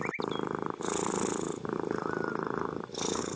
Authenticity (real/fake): real